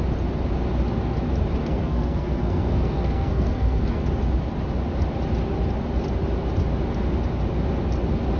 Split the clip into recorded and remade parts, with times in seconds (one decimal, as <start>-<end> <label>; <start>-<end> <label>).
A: 0.0-1.6 recorded; 1.6-4.0 remade; 4.0-8.4 recorded